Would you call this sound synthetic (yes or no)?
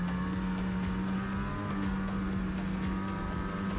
no